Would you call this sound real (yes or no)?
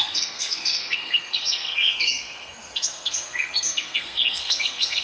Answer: no